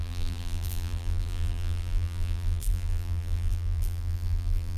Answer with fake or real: fake